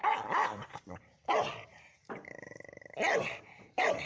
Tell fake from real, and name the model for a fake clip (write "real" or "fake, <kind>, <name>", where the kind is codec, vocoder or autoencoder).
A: fake, vocoder, BigVGAN v2